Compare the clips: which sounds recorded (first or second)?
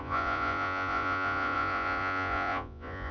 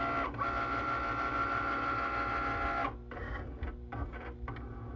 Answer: second